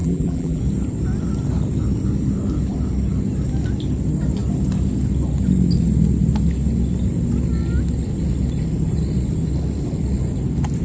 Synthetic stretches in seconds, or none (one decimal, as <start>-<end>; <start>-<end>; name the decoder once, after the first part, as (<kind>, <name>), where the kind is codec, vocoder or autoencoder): 0.0-0.6 (vocoder, BigVGAN v2)

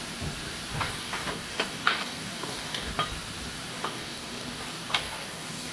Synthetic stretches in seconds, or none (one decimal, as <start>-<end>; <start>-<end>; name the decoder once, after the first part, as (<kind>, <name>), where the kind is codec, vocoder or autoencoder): 0.7-2.9 (codec, DAC); 3.7-5.7

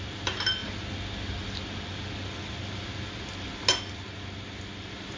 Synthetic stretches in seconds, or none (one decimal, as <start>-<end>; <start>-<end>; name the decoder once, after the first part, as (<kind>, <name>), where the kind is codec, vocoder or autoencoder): none